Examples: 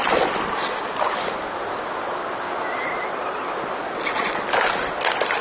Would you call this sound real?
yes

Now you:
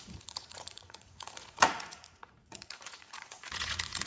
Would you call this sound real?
no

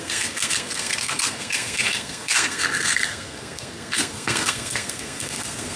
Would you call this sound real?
no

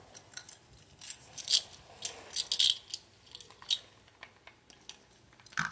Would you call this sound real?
yes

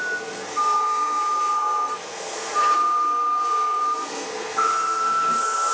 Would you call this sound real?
no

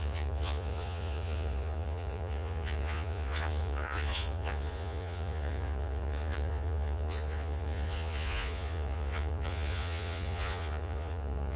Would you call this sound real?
no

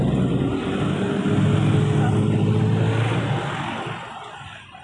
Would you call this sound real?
yes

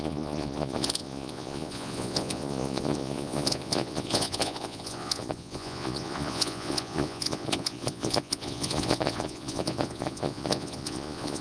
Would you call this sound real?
no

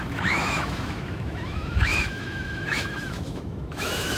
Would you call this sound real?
no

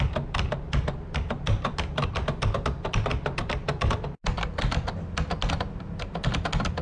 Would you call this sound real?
yes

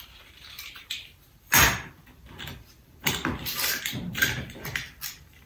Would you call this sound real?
no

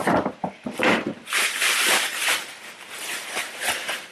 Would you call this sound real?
no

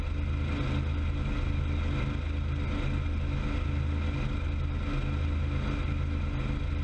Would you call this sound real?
yes